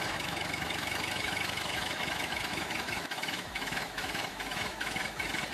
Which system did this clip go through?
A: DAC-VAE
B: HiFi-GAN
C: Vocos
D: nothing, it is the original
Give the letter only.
A